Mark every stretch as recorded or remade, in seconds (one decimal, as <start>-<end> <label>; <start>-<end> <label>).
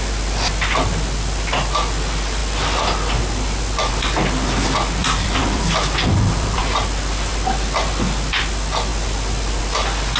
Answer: 0.0-5.0 recorded; 5.0-6.6 remade; 6.6-10.2 recorded